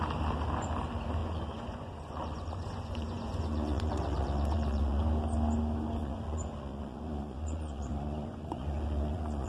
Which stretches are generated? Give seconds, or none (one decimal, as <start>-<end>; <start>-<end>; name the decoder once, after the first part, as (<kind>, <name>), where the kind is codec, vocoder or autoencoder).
1.2-5.0 (vocoder, Vocos); 6.0-9.5